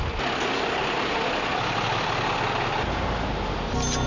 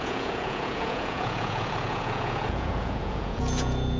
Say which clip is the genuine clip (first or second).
first